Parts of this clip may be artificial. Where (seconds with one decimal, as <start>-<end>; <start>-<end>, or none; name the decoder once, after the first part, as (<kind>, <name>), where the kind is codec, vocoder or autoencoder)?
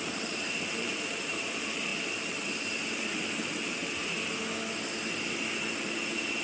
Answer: 0.0-3.8 (vocoder, BigVGAN v2)